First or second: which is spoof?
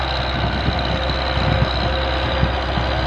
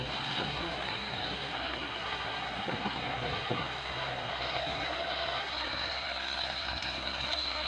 second